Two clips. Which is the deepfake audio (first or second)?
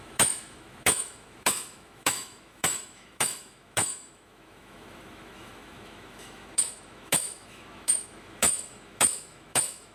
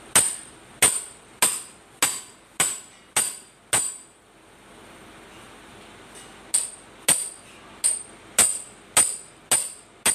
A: first